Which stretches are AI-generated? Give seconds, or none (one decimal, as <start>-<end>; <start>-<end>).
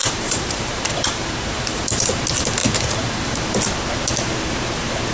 0.0-2.1; 2.6-3.3